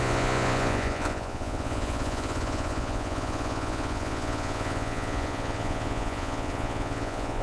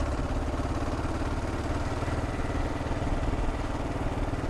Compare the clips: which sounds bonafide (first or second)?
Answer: second